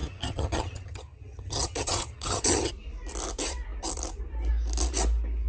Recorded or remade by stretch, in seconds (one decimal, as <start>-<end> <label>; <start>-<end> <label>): 0.0-2.7 remade; 2.7-5.5 recorded